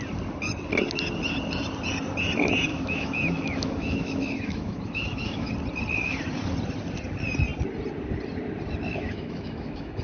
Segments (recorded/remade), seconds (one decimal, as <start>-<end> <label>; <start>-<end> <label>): 0.0-2.7 recorded; 2.7-5.5 remade; 5.5-8.9 recorded; 8.9-10.0 remade